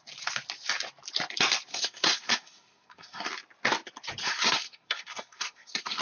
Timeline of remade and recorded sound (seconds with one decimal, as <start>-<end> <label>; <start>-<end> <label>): 0.0-1.7 recorded; 1.7-3.3 remade; 3.3-4.2 recorded; 4.2-6.0 remade